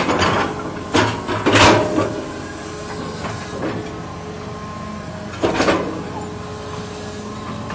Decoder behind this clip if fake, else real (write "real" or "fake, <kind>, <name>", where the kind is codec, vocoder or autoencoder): real